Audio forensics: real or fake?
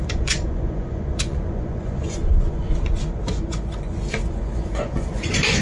fake